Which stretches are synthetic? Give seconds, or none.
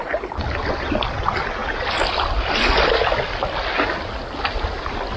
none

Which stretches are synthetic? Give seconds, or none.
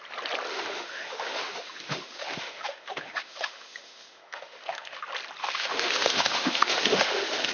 0.5-5.0 (autoencoder, DAC-VAE); 5.4-7.5